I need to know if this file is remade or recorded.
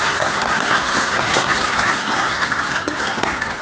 remade